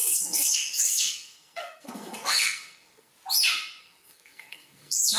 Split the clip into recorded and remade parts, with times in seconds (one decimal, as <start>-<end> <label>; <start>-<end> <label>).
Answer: 0.0-3.1 remade; 3.1-3.8 recorded; 3.8-5.2 remade